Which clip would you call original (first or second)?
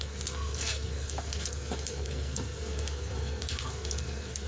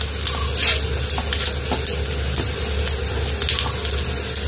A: second